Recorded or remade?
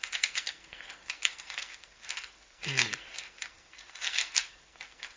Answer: remade